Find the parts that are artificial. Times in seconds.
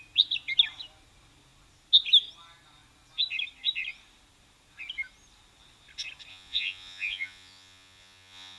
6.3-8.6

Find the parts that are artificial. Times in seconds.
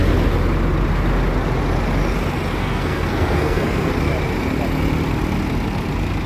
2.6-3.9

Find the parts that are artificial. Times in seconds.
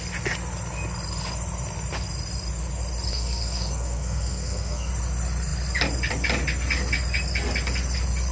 3.1-4.9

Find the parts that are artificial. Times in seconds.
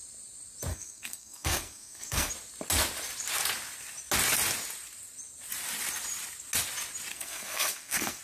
0.7-2.3; 7.1-8.2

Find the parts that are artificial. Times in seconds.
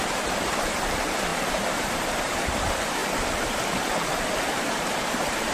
0.0-3.0; 4.6-5.5